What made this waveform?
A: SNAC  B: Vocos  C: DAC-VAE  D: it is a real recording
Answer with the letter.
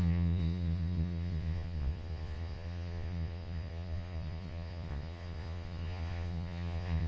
B